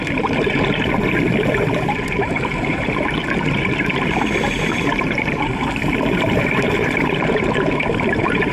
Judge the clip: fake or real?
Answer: fake